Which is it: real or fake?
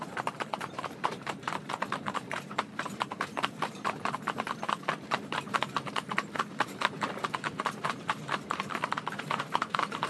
fake